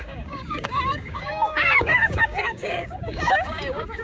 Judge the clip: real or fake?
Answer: fake